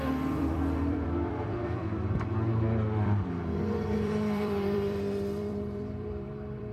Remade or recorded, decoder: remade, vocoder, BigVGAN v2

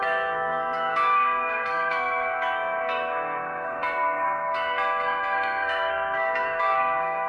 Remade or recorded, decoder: remade, codec, SNAC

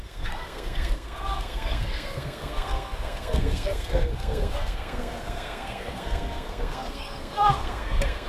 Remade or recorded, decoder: remade, codec, SNAC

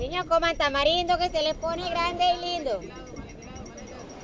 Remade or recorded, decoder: recorded